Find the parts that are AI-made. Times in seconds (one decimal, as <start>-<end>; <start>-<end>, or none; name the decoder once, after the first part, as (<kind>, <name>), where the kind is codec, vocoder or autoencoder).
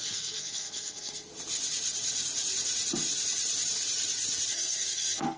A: 0.0-1.3 (codec, SNAC); 4.5-5.4